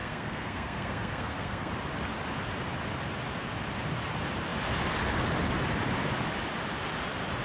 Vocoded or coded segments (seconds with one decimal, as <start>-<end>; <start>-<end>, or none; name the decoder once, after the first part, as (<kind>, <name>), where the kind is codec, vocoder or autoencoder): 0.0-1.7 (codec, SNAC)